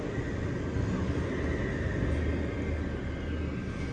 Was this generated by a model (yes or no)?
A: no